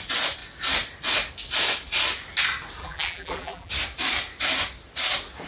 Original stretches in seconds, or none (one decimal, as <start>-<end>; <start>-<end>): 0.0-2.8; 3.7-5.5

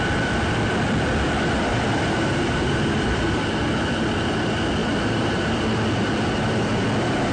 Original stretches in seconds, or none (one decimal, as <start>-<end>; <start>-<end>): 0.0-1.7; 3.6-4.8; 5.5-7.3